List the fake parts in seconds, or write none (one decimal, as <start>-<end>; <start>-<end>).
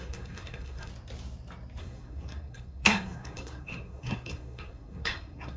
0.0-0.9; 1.8-5.6